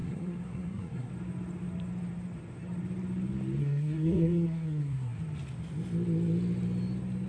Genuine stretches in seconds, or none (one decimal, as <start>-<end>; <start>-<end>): 1.1-3.6; 5.2-7.3

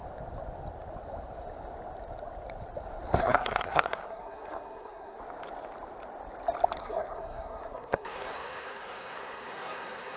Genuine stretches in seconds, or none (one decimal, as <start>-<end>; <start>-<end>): 0.0-3.2; 5.2-6.8

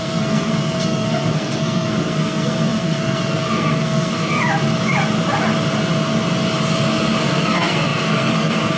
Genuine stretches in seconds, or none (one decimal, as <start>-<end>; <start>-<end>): 4.4-7.2

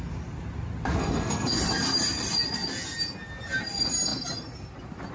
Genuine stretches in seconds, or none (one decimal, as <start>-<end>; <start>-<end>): 0.0-1.0; 1.6-5.1

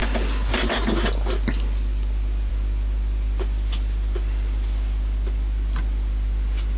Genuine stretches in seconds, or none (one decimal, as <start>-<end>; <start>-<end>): 0.0-6.8

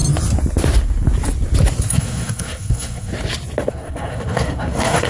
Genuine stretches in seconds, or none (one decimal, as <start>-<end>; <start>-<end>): 0.0-1.9; 3.1-3.7

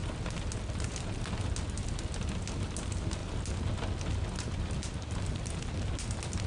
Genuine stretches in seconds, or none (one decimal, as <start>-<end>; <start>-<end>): 0.0-6.5